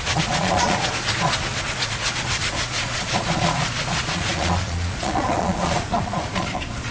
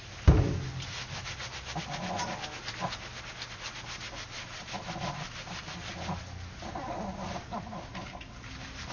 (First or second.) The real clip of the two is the second